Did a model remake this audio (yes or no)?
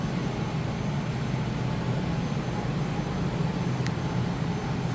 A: no